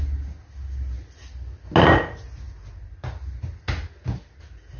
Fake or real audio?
real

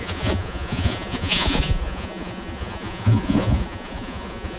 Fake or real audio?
fake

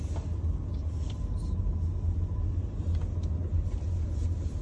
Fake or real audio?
real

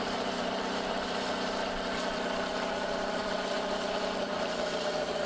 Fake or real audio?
fake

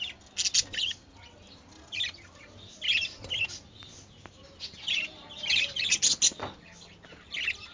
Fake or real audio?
real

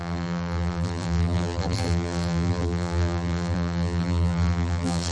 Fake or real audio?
fake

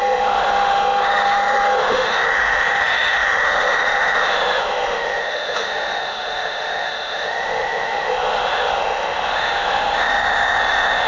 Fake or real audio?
fake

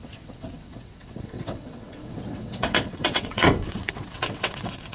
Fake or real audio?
fake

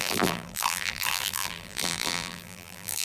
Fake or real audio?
fake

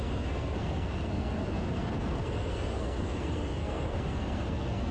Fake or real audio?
fake